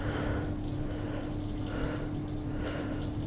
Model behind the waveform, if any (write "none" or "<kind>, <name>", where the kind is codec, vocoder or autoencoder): none